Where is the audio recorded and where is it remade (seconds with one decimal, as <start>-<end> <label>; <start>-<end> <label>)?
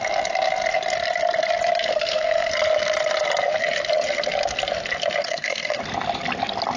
0.0-1.9 recorded; 1.9-2.5 remade; 2.5-5.2 recorded; 5.2-5.8 remade; 5.8-6.8 recorded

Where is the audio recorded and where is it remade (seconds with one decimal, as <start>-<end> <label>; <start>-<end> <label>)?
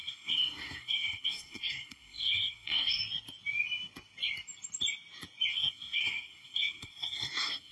0.0-3.0 remade; 3.0-5.5 recorded; 5.5-7.7 remade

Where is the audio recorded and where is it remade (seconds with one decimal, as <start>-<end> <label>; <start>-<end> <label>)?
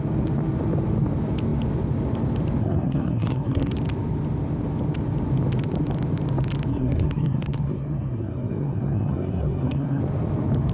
0.0-2.6 recorded; 2.6-3.7 remade; 3.7-6.7 recorded; 6.7-10.0 remade; 10.0-10.7 recorded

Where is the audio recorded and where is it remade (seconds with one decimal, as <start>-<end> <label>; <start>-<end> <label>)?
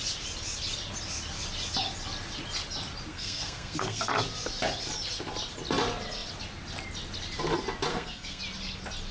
0.0-3.1 recorded; 3.1-4.1 remade; 4.1-7.9 recorded; 7.9-8.4 remade; 8.4-9.1 recorded